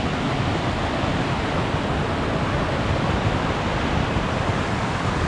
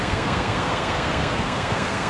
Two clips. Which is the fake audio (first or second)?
second